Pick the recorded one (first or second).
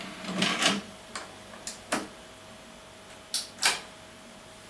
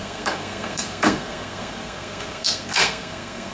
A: first